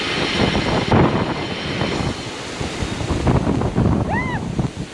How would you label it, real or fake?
real